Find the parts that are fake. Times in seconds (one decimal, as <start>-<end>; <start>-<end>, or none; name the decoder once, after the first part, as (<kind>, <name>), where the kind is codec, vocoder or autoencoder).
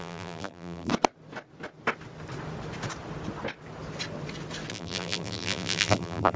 0.0-0.9 (vocoder, BigVGAN v2); 4.7-6.4